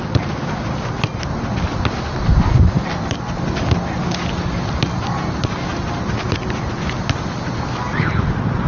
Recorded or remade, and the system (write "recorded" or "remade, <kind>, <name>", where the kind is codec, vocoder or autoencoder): recorded